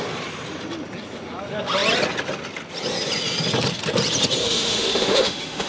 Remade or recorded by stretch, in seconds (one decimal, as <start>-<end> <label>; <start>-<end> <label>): 0.0-4.4 recorded; 4.4-5.7 remade